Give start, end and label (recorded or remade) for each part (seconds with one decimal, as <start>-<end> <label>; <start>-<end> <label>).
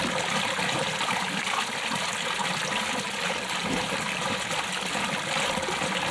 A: 0.0-3.6 recorded; 3.6-4.5 remade; 4.5-6.1 recorded